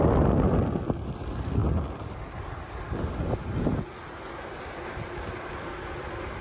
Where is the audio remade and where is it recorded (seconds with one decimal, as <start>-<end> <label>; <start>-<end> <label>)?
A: 0.0-6.4 recorded